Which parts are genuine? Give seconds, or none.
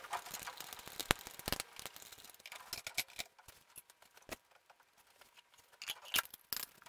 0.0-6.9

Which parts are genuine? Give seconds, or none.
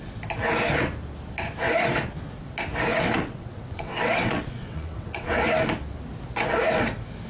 0.0-2.9; 5.4-7.3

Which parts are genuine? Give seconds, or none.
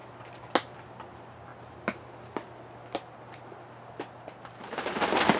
0.0-1.1; 1.5-4.6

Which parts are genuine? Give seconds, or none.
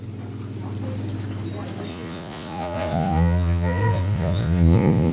0.0-1.9